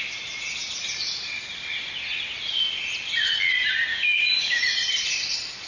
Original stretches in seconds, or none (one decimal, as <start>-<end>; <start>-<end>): 0.0-3.9; 4.6-5.7